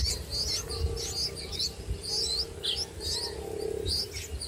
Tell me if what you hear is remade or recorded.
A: recorded